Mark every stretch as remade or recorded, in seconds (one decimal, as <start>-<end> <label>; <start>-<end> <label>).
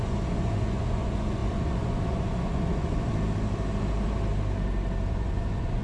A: 0.0-3.1 remade; 3.1-5.1 recorded; 5.1-5.8 remade